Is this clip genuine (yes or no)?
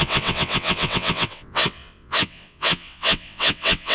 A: no